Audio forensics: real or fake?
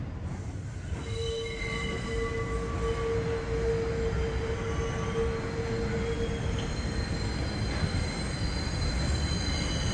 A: real